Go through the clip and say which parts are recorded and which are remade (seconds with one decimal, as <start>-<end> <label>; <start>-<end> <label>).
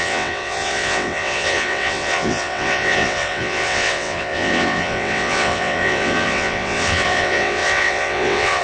0.0-8.6 remade